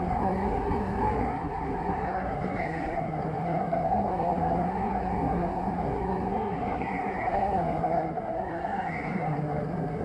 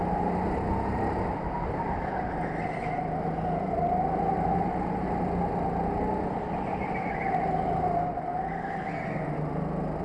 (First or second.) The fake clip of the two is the first